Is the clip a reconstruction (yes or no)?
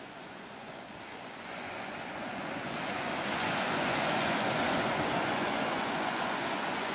yes